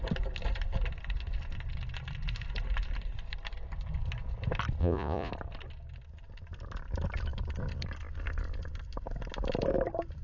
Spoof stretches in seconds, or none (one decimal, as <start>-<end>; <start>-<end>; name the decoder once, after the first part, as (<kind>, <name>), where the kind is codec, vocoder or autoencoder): 4.8-5.3 (vocoder, Vocos)